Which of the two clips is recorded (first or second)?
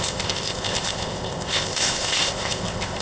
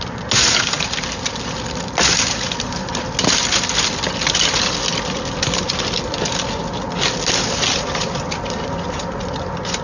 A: second